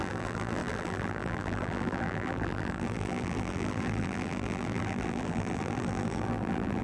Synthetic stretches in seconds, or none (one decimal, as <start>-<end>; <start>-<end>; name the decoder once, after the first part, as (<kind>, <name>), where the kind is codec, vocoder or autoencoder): 0.0-6.8 (vocoder, BigVGAN v2)